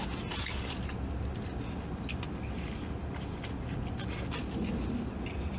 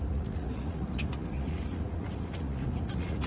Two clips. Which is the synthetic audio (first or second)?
second